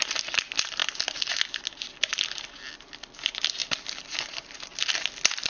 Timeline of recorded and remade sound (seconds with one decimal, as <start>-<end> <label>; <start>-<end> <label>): 0.0-5.5 recorded